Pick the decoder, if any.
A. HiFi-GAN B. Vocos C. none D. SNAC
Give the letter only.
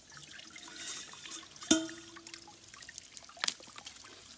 C